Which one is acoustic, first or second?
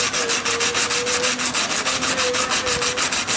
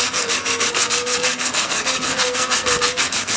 first